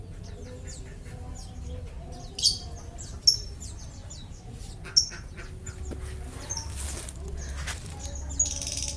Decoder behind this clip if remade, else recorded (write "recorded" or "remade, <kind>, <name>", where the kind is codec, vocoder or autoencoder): recorded